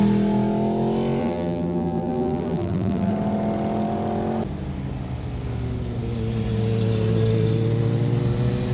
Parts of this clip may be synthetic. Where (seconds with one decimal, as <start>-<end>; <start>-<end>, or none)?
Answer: 1.2-3.1